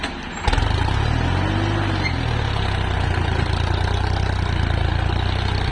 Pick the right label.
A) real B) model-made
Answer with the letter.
A